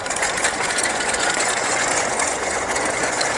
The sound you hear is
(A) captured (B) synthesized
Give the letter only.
B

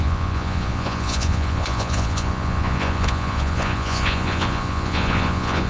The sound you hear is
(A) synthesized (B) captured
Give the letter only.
A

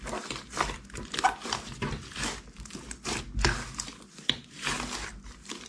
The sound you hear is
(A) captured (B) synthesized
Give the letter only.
A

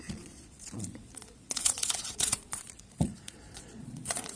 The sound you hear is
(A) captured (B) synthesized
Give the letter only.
B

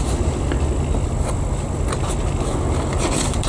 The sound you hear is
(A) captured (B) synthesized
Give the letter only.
A